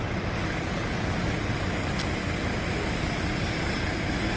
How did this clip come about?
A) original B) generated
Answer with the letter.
A